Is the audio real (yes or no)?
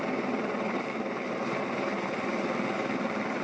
yes